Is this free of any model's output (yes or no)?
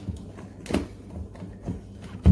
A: yes